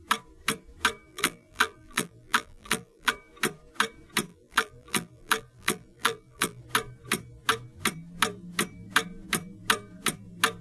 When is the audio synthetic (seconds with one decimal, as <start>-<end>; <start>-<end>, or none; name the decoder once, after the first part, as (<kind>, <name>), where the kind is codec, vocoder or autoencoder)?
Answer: 1.1-3.1 (vocoder, BigVGAN v2); 4.3-6.6